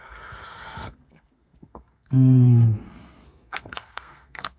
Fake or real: fake